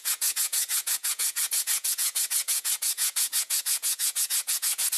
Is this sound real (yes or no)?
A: no